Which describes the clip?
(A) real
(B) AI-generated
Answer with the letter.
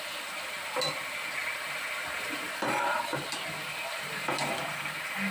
B